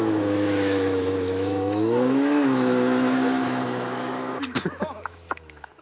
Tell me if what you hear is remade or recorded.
remade